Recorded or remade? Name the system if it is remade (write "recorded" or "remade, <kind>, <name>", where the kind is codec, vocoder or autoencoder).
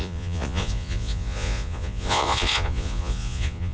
remade, vocoder, Vocos